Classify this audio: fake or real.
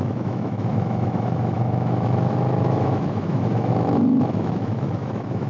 fake